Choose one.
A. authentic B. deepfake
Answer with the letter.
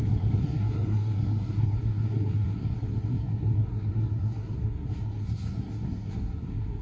B